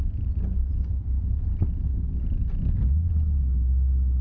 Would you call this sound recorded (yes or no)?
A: yes